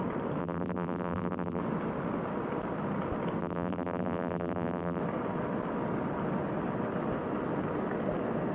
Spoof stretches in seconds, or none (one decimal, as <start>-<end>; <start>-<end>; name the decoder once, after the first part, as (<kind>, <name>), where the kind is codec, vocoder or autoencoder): 0.4-1.6 (vocoder, BigVGAN v2); 3.4-5.0